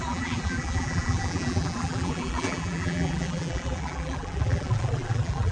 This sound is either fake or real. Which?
fake